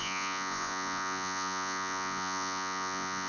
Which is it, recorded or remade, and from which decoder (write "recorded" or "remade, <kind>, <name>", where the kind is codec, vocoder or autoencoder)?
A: remade, vocoder, Vocos